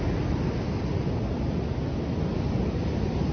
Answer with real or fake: real